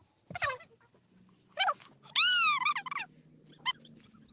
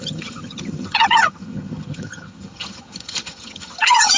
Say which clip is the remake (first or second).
second